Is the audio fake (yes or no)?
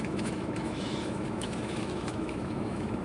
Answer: yes